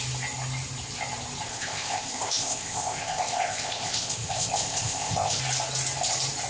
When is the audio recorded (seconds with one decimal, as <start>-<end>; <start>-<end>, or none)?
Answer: 0.0-1.5; 5.4-6.5